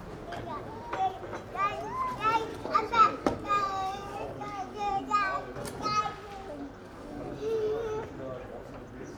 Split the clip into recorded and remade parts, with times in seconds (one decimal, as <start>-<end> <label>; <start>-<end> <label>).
0.0-2.5 recorded; 2.5-5.0 remade; 5.0-6.8 recorded; 6.8-7.3 remade; 7.3-9.2 recorded